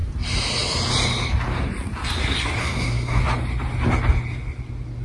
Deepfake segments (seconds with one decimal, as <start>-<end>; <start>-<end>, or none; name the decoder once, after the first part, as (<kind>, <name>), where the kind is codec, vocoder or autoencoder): 2.6-3.2 (codec, SNAC)